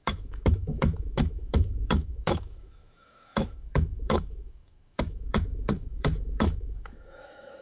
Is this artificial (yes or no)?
yes